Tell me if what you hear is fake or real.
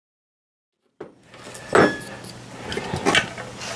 real